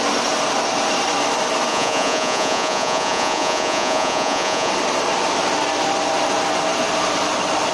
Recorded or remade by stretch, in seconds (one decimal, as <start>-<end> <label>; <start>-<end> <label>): 0.0-1.7 recorded; 1.7-4.7 remade; 4.7-7.7 recorded